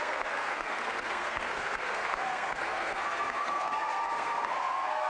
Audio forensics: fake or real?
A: fake